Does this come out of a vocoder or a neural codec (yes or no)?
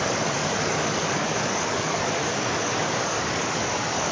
yes